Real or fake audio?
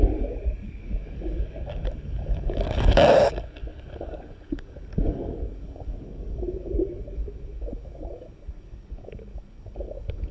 fake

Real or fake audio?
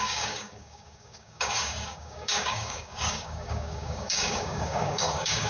fake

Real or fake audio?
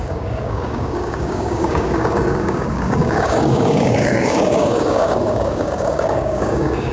fake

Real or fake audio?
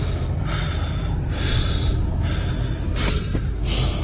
real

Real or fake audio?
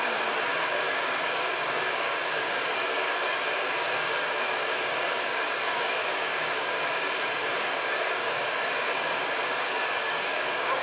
fake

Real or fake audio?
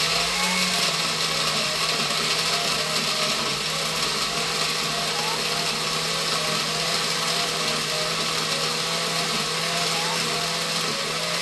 real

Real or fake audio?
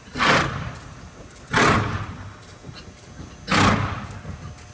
real